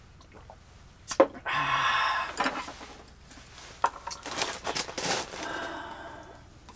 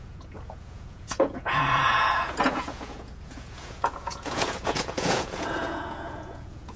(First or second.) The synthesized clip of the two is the second